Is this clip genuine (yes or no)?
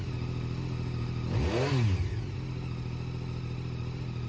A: yes